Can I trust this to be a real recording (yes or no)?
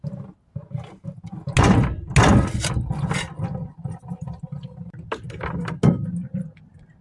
yes